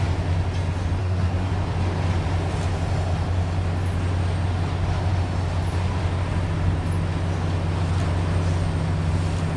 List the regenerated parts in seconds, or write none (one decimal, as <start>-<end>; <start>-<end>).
1.0-1.5